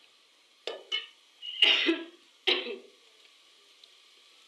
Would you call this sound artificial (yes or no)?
no